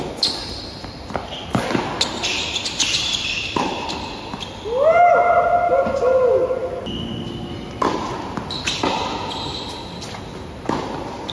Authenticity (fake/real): real